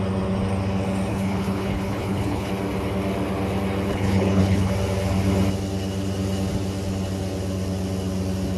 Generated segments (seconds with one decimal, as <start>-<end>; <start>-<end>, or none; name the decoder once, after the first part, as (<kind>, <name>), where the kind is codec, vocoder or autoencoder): 1.1-2.5 (codec, HILCodec); 3.9-4.7